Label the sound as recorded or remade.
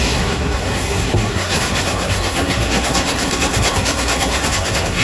remade